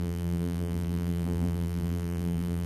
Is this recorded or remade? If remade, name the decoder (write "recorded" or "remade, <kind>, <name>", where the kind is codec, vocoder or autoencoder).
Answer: remade, vocoder, BigVGAN v2